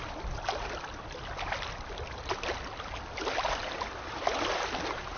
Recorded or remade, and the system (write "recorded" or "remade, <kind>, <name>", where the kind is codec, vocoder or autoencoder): recorded